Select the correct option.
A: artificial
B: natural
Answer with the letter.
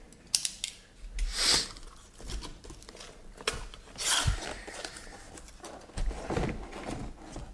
B